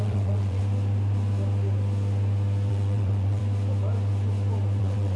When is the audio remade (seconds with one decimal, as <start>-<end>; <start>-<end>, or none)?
0.0-0.6; 2.7-3.4; 4.8-5.2